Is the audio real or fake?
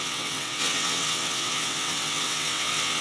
fake